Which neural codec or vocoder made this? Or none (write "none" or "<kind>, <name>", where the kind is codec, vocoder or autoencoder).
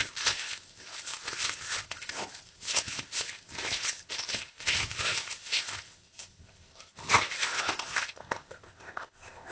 codec, ZipCodec